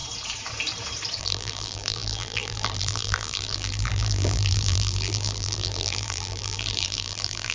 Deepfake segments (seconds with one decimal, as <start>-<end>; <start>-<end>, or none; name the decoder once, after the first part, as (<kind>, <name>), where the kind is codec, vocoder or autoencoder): 1.2-7.5 (vocoder, BigVGAN v2)